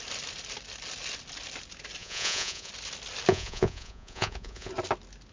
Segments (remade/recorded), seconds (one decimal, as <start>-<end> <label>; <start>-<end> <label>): 0.0-2.0 recorded; 2.0-2.7 remade; 2.7-3.3 recorded; 3.3-4.7 remade; 4.7-5.3 recorded